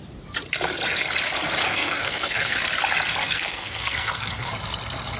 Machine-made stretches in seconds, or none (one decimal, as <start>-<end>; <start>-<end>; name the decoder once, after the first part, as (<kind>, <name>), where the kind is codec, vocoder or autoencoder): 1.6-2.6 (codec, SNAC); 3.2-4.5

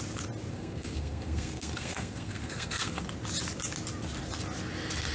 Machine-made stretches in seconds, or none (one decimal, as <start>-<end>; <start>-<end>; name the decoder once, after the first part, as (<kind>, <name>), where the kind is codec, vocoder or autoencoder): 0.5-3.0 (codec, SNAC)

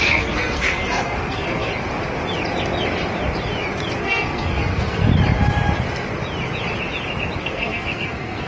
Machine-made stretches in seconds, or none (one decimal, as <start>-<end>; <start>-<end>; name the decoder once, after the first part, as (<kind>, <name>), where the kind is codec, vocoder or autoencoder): 0.0-1.7 (codec, SNAC); 4.0-5.1; 7.4-8.5